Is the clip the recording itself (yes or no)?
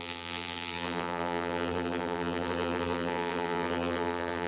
no